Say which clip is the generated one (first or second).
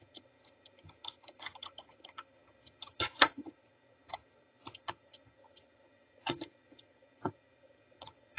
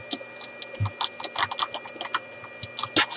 first